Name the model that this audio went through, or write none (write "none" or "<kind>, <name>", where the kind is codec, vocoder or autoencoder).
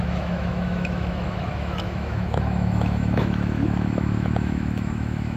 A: autoencoder, DAC-VAE